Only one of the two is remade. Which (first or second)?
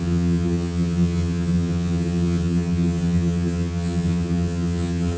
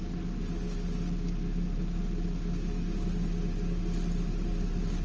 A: first